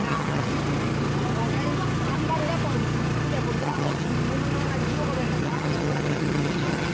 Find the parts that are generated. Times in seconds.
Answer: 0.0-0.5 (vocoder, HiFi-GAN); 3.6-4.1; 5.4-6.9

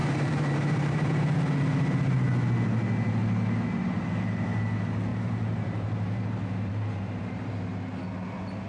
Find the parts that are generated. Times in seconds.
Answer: 0.0-1.1 (vocoder, BigVGAN v2); 5.1-7.5

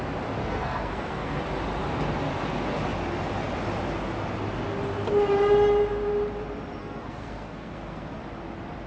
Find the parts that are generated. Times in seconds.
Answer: 0.4-1.4 (codec, SNAC); 6.8-8.2

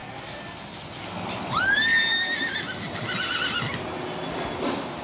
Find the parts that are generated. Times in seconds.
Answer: none

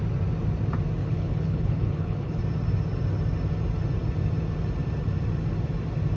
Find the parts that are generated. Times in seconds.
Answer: 1.0-2.4 (codec, HILCodec)